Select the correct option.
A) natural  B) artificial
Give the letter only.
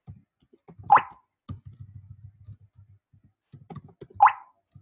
A